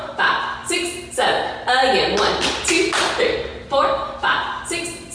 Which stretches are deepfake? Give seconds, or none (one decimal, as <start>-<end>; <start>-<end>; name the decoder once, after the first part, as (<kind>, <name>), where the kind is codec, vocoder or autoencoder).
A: none